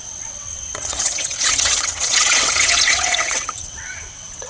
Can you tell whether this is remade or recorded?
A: remade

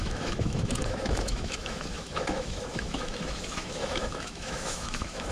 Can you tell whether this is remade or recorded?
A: remade